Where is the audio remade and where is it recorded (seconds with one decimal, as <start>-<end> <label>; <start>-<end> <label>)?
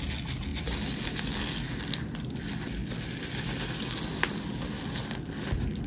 0.0-5.9 recorded